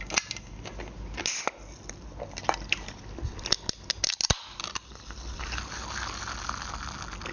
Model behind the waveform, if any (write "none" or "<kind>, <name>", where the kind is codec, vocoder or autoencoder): none